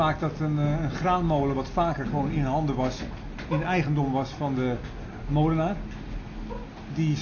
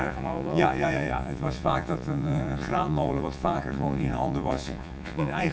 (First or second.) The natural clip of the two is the first